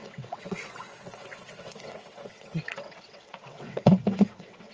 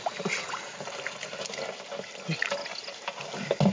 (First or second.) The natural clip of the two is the second